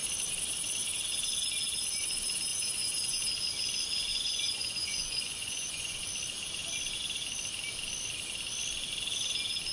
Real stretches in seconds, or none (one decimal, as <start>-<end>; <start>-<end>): 0.0-2.5; 3.2-4.1; 6.0-9.7